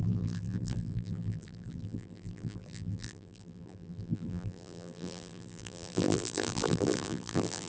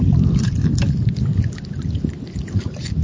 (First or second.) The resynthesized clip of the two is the first